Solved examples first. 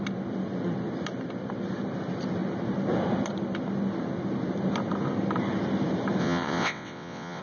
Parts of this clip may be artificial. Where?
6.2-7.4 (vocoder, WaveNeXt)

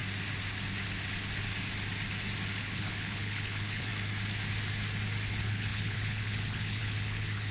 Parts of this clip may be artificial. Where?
2.6-3.9 (codec, HILCodec); 5.3-7.5

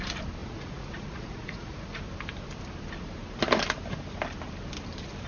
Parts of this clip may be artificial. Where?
0.4-2.0 (vocoder, Vocos)

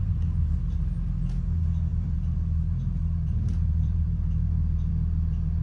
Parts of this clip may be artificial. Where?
1.9-4.9 (vocoder, BigVGAN v2)

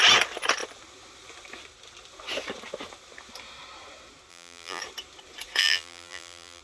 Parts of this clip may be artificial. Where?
4.3-4.8 (vocoder, BigVGAN v2); 5.6-6.6